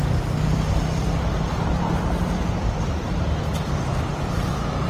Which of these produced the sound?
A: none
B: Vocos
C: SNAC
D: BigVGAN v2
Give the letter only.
A